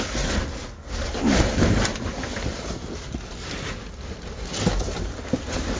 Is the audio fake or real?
real